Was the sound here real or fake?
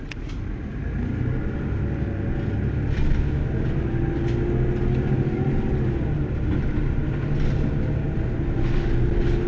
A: real